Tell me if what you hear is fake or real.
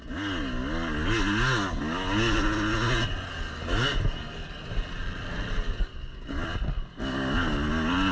real